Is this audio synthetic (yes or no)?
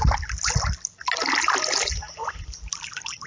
no